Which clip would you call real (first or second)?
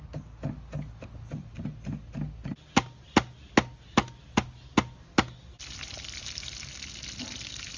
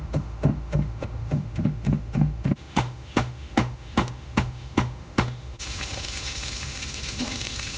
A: first